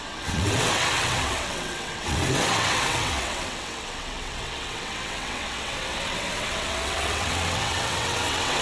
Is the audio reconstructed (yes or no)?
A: yes